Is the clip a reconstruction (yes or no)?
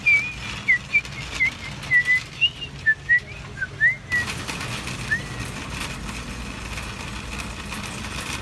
no